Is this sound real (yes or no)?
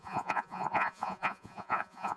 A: no